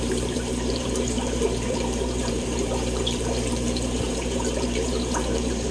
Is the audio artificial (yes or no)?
yes